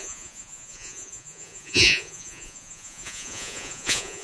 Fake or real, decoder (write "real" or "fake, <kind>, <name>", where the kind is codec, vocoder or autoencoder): fake, vocoder, Vocos